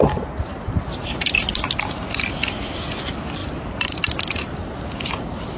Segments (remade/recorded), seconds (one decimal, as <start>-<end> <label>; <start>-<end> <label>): 0.0-3.4 recorded; 3.4-4.2 remade; 4.2-5.6 recorded